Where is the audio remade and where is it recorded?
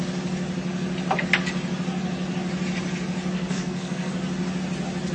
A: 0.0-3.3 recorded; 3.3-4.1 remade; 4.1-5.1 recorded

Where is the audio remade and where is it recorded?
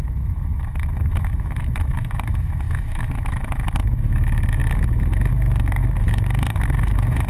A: 0.0-7.3 remade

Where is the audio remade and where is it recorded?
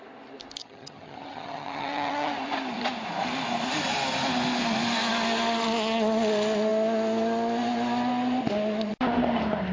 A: 0.0-0.6 recorded; 0.6-2.3 remade; 2.3-9.7 recorded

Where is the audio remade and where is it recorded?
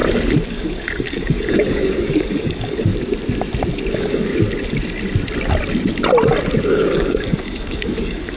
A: 0.0-0.5 recorded; 0.5-2.9 remade; 2.9-3.9 recorded; 3.9-4.3 remade; 4.3-6.7 recorded; 6.7-8.4 remade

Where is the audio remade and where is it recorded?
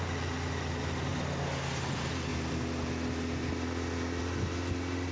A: 0.0-5.1 recorded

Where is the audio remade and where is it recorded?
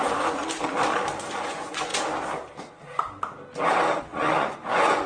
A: 0.0-0.4 remade; 0.4-1.3 recorded; 1.3-1.9 remade; 1.9-4.0 recorded; 4.0-5.1 remade